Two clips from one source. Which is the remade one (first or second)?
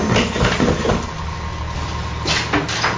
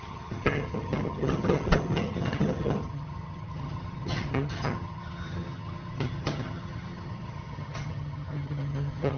second